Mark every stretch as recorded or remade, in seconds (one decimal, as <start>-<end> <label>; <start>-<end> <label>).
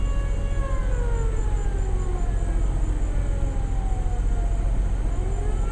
0.0-5.7 recorded